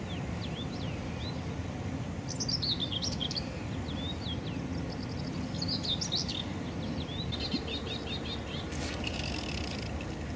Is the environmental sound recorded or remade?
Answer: recorded